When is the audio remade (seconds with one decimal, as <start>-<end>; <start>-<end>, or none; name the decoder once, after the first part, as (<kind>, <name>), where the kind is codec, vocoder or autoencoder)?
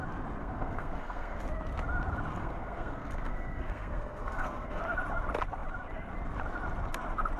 0.4-1.4 (codec, SNAC); 2.4-4.8